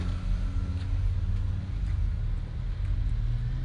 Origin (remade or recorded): recorded